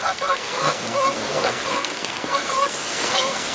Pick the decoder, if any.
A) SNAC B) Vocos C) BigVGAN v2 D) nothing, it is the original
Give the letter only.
A